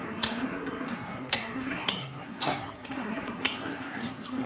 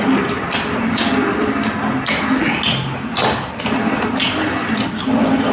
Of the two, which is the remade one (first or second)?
first